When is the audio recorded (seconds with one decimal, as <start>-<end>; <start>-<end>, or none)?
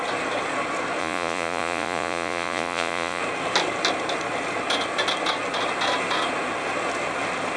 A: 0.0-1.0; 3.2-7.6